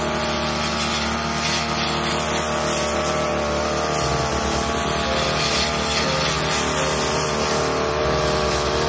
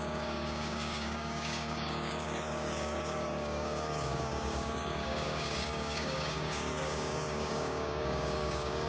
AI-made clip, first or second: second